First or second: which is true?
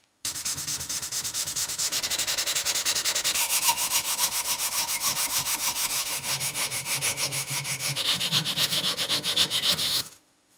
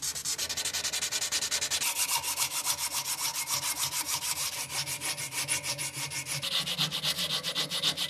second